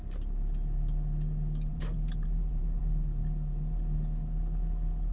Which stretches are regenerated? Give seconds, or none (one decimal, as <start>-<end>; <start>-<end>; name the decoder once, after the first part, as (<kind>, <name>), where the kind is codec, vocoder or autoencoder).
1.7-2.8 (vocoder, BigVGAN v2)